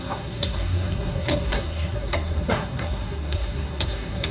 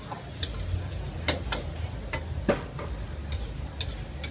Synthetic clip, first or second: first